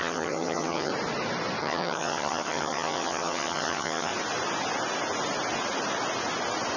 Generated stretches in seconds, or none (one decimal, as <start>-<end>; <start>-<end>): 0.0-0.9; 1.6-4.1